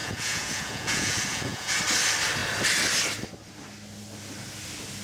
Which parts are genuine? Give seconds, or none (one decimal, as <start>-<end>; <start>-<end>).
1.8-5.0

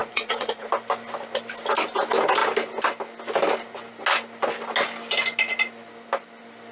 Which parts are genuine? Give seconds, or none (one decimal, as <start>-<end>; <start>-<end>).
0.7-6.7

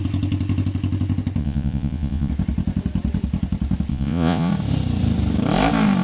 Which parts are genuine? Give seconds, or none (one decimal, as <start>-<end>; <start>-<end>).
0.0-1.4; 2.3-3.9; 4.5-6.0

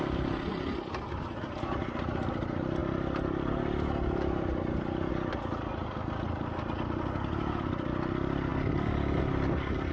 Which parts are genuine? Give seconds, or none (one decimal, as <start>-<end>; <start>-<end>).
0.0-9.9

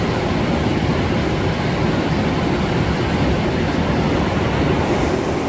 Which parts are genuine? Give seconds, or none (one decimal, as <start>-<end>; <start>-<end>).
0.0-5.5

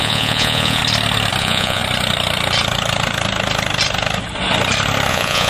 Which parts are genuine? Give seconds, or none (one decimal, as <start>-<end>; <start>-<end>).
0.8-1.4; 1.8-5.1

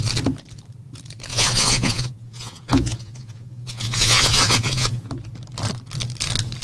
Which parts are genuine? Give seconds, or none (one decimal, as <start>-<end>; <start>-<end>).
0.0-1.3; 5.1-6.6